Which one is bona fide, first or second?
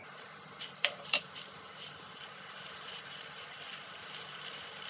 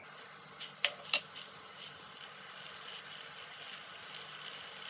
second